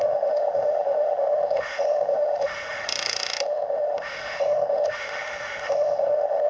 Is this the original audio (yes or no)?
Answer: no